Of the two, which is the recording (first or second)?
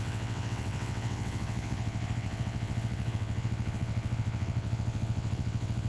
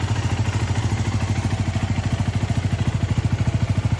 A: second